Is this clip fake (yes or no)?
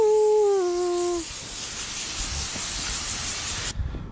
no